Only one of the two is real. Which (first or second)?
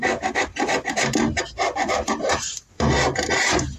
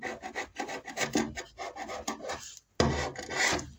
second